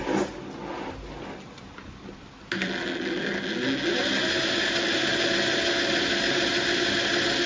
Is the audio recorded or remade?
recorded